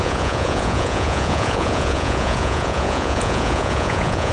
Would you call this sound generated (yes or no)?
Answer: yes